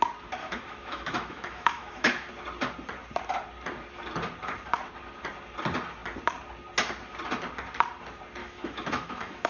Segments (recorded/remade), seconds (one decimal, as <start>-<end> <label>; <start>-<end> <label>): 0.0-0.4 recorded; 0.4-2.3 remade; 2.3-8.4 recorded; 8.4-9.5 remade